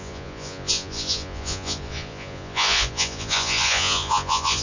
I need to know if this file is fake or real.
fake